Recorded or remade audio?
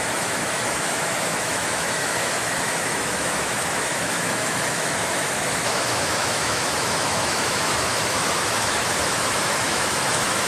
remade